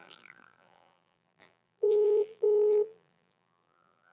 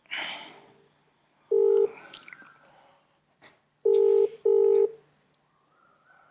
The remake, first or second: first